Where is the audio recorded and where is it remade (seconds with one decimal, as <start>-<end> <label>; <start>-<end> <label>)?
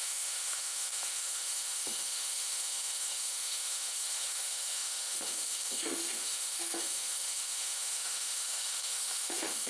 0.0-9.7 remade